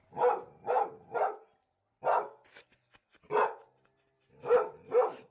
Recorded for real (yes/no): yes